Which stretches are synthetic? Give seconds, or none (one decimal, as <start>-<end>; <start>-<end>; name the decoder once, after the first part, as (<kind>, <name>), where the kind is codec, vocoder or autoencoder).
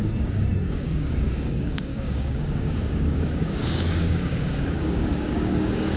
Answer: 0.0-6.0 (codec, DAC)